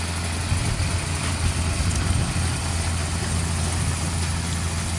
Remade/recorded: recorded